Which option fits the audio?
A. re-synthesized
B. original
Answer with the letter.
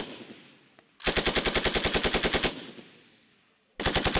B